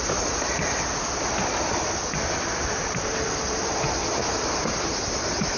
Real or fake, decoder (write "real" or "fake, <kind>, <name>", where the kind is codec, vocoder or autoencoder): fake, vocoder, BigVGAN v2